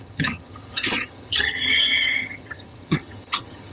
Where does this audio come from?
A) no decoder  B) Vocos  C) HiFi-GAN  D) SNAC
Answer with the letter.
C